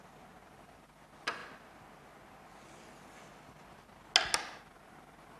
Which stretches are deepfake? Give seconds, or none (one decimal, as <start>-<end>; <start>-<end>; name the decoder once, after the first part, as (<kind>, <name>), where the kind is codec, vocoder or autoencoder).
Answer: 0.5-1.4 (vocoder, BigVGAN v2); 4.6-5.4